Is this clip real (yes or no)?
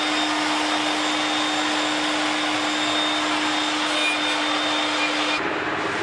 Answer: yes